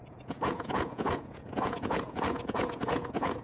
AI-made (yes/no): yes